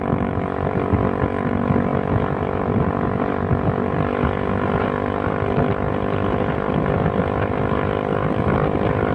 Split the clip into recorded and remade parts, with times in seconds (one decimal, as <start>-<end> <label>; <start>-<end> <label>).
0.0-9.1 recorded